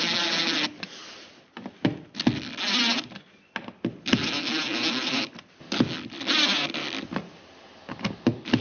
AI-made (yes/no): no